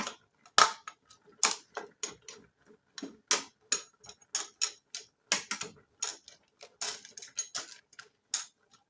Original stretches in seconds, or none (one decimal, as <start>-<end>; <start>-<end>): 0.0-8.9

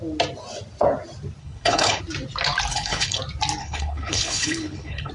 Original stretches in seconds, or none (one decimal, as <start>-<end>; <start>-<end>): 0.0-1.4; 2.0-2.7; 3.2-3.6

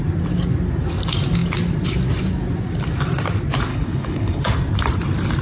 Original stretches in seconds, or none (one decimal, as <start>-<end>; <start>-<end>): 0.0-3.7; 4.4-5.4